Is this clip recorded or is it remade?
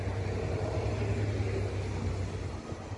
recorded